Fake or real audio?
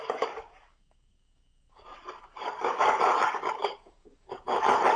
fake